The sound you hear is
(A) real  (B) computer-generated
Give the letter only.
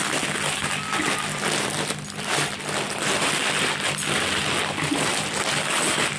A